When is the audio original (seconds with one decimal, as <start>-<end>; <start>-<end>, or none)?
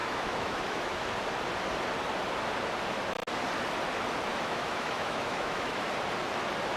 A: 1.1-4.3; 5.9-6.8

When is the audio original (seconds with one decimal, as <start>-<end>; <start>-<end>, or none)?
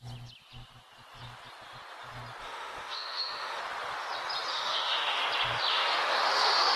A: 0.0-2.4; 3.6-4.5; 5.2-5.7